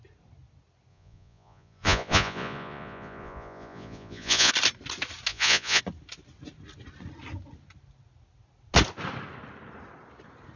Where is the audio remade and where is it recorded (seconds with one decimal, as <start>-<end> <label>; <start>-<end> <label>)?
0.0-0.9 recorded; 0.9-4.5 remade; 4.5-5.3 recorded; 5.3-5.8 remade; 5.8-10.6 recorded